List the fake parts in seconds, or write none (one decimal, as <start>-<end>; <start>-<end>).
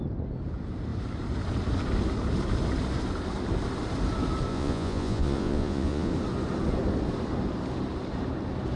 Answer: 4.5-6.1